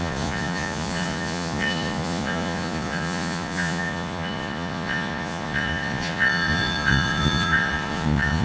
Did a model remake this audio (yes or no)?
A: yes